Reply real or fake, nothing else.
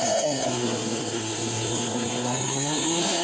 fake